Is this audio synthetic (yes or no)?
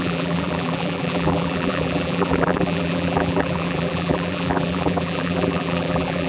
yes